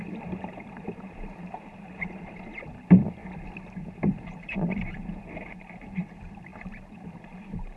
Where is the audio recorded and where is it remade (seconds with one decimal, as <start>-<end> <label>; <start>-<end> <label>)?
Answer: 0.0-3.2 remade; 3.2-3.8 recorded; 3.8-7.8 remade